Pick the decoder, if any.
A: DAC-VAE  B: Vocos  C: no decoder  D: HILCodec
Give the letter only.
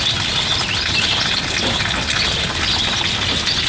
C